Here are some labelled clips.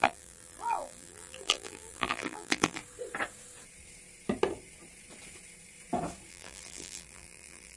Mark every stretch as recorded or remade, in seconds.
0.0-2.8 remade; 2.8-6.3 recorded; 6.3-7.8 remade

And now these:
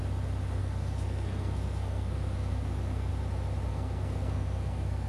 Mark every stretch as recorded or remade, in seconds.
0.0-0.6 recorded; 0.6-3.1 remade; 3.1-3.7 recorded; 3.7-5.1 remade